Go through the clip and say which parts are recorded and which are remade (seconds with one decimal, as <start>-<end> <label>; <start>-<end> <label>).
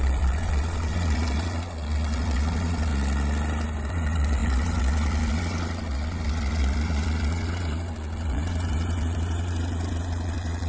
0.0-2.9 remade; 2.9-3.9 recorded; 3.9-10.7 remade